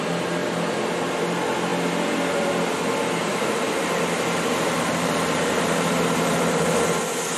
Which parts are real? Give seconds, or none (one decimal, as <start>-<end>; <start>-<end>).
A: 0.0-3.2; 5.9-7.4